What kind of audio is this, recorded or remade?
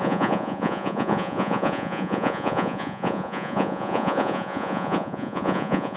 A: remade